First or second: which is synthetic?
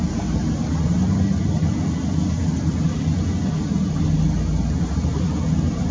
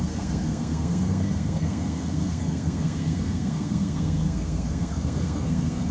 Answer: second